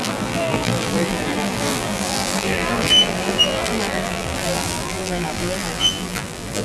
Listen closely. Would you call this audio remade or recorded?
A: remade